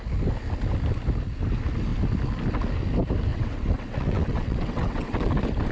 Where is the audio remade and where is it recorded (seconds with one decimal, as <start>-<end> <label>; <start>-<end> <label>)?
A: 0.0-3.3 recorded; 3.3-5.3 remade; 5.3-5.7 recorded